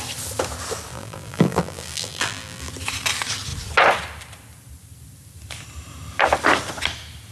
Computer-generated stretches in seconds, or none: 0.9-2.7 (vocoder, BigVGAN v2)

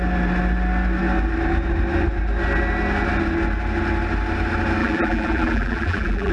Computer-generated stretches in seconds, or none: 4.8-6.3 (vocoder, BigVGAN v2)

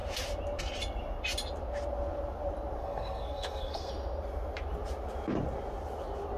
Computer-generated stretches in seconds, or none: 2.8-3.9 (codec, SNAC)